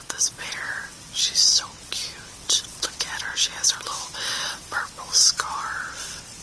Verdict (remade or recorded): remade